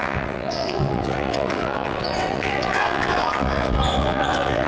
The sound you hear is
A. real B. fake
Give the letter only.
B